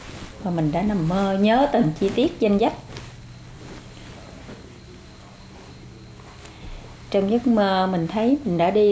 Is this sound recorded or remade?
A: recorded